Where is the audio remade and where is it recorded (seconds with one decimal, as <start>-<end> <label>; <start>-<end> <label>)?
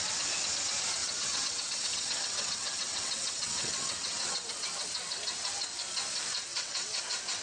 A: 0.0-1.0 recorded; 1.0-4.5 remade; 4.5-6.5 recorded; 6.5-7.0 remade; 7.0-7.4 recorded